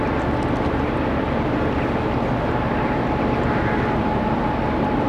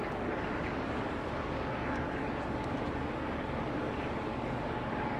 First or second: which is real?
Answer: first